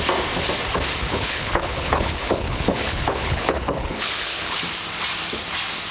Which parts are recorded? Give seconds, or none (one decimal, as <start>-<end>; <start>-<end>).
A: 0.0-1.1; 4.6-5.9